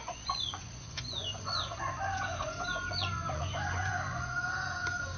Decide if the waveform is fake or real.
fake